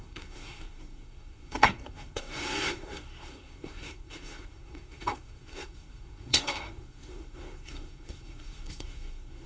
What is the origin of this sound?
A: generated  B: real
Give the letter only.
A